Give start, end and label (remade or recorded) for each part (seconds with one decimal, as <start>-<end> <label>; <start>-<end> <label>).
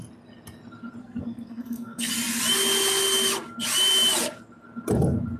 0.0-1.0 recorded; 1.0-2.1 remade; 2.1-5.4 recorded